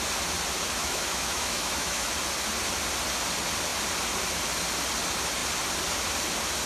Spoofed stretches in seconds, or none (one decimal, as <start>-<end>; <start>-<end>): 0.8-2.1